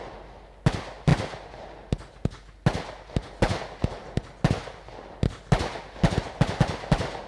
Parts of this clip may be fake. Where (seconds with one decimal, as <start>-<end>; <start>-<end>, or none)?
none

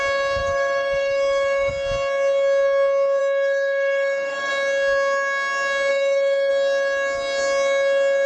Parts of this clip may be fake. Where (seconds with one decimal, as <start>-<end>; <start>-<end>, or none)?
0.4-1.7; 3.2-4.5; 5.9-6.5

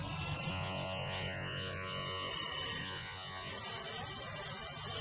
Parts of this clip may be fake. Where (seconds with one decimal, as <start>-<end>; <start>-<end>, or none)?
0.5-2.3; 2.8-3.5

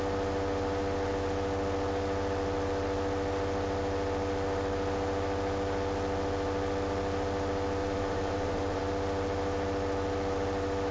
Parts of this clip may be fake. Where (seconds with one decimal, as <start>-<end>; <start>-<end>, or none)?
7.8-8.8